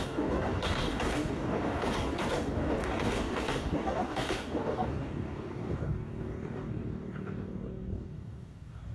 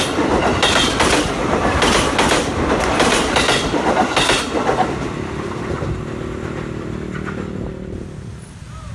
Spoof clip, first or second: first